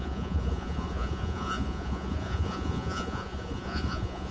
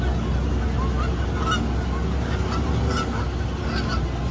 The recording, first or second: second